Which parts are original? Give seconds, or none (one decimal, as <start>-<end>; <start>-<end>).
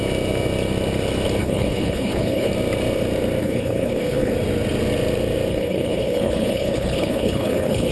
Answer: 0.0-1.4; 2.5-3.4; 4.3-5.5